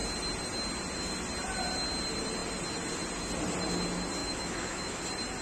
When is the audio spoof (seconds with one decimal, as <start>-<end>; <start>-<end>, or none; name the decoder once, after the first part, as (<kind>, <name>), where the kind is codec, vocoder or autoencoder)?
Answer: 4.2-5.0 (autoencoder, DAC-VAE)

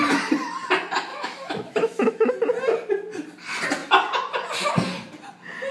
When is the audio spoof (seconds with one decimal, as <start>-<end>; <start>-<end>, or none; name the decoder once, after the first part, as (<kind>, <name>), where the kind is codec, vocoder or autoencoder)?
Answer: 1.1-2.3 (autoencoder, DAC-VAE)

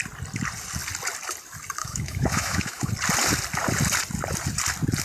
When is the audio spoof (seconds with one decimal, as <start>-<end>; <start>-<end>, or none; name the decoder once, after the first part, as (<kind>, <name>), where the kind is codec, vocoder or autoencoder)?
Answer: 1.8-2.9 (autoencoder, DAC-VAE)

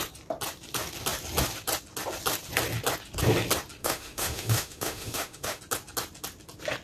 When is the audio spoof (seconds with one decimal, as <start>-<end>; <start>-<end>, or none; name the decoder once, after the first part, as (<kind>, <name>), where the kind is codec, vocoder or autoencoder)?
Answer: 3.8-5.6 (autoencoder, DAC-VAE)

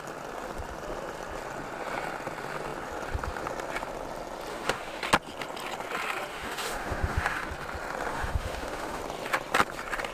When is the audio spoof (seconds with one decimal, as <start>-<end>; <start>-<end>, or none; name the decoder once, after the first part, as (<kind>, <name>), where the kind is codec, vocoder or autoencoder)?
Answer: 4.5-5.0 (autoencoder, DAC-VAE); 6.3-7.5; 8.1-9.0

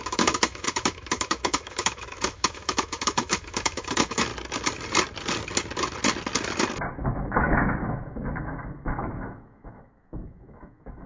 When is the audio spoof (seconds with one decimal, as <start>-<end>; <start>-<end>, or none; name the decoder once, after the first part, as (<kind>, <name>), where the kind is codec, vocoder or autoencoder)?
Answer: 0.0-4.3 (autoencoder, DAC-VAE); 6.9-11.1

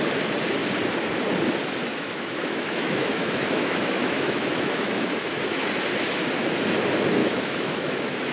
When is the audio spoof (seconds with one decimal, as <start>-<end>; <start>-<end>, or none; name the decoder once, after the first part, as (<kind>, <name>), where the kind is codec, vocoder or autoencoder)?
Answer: 1.9-5.7 (autoencoder, DAC-VAE); 7.2-8.3